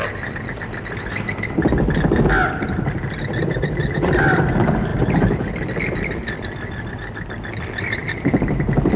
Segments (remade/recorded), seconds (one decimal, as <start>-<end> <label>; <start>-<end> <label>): 0.0-8.0 recorded; 8.0-8.6 remade; 8.6-9.0 recorded